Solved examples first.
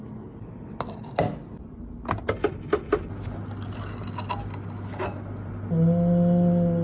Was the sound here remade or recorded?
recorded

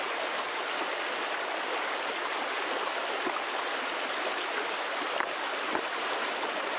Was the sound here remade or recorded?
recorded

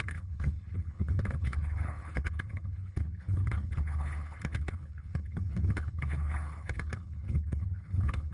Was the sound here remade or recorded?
remade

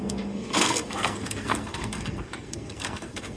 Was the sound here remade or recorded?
remade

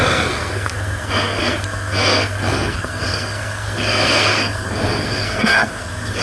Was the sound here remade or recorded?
remade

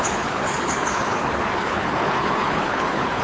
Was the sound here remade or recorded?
remade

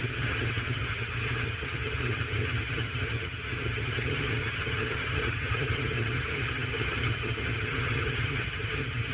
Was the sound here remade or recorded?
remade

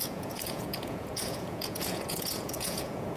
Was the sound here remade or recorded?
remade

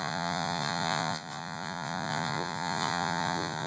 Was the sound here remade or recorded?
remade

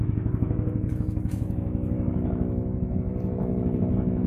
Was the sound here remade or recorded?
remade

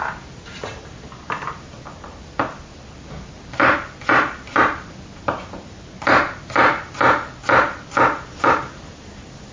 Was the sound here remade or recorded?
recorded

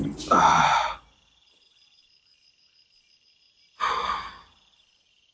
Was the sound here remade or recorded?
recorded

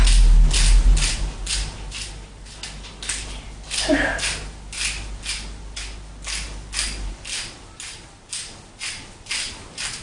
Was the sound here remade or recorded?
recorded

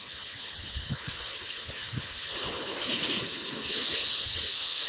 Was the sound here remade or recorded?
remade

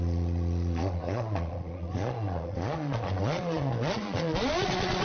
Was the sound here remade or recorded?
remade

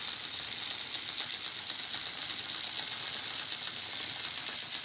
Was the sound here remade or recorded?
recorded